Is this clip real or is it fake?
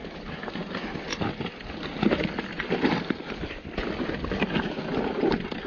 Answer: real